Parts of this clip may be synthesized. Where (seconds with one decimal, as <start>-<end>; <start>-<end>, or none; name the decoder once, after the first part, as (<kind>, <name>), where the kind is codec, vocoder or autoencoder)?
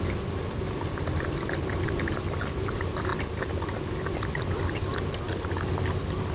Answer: 3.1-3.7 (vocoder, BigVGAN v2)